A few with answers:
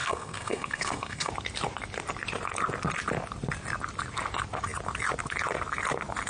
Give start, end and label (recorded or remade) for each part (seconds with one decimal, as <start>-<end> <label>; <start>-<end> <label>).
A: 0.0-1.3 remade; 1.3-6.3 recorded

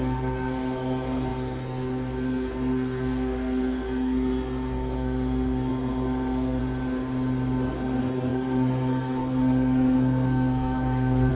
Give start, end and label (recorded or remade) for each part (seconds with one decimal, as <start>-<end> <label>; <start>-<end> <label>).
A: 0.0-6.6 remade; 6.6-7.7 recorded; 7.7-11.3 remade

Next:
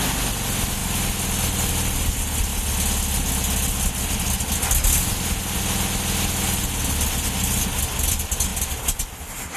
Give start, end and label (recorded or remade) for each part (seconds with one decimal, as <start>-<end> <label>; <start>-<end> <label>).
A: 0.0-9.6 recorded